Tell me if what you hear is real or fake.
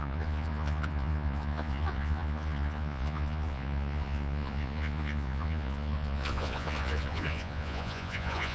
fake